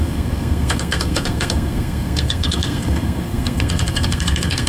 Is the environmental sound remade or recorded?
remade